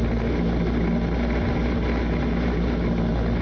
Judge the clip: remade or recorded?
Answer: recorded